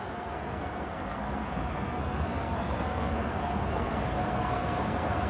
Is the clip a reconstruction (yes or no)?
yes